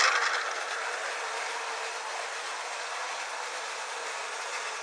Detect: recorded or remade recorded